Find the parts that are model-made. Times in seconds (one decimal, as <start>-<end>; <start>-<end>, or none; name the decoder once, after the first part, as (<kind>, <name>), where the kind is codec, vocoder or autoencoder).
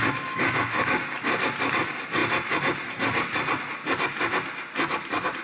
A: 0.0-1.0 (autoencoder, DAC-VAE)